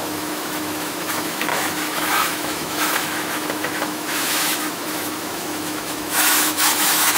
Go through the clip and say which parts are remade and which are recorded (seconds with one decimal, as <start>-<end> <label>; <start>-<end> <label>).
0.0-7.2 remade